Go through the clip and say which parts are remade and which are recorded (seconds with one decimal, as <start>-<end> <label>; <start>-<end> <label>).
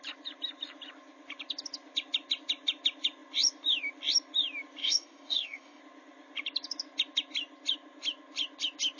0.0-4.8 recorded; 4.8-5.8 remade; 5.8-9.0 recorded